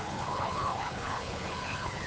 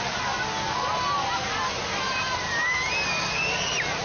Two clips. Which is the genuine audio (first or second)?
second